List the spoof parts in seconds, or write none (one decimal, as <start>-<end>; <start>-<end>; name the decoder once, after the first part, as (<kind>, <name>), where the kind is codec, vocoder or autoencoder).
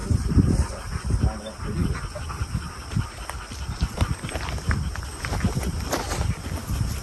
0.0-0.7 (vocoder, BigVGAN v2); 1.8-6.0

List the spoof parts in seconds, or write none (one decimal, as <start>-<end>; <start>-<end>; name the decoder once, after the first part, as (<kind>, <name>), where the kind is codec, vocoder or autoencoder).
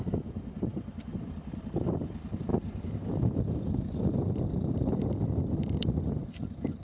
0.7-1.9 (vocoder, BigVGAN v2); 2.5-6.0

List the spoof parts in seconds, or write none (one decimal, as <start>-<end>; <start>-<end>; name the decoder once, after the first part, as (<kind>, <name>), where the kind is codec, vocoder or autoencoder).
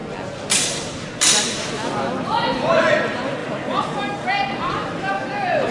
3.4-5.1 (vocoder, BigVGAN v2)